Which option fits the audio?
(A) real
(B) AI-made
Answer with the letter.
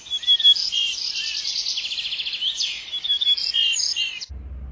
A